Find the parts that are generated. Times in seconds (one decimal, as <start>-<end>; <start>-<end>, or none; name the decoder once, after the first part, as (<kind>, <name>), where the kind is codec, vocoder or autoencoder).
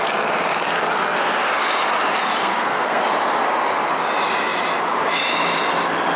2.4-3.0 (codec, SNAC)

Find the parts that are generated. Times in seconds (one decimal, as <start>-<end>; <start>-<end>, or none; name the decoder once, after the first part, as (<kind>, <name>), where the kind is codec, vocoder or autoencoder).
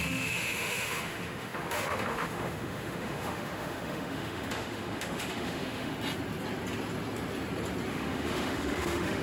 0.0-5.9 (autoencoder, DAC-VAE); 7.9-9.2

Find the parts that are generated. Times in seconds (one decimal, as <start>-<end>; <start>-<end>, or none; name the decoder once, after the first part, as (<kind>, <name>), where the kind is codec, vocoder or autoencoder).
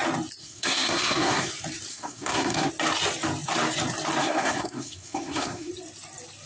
0.4-1.5 (codec, SNAC); 1.9-2.7; 4.2-5.7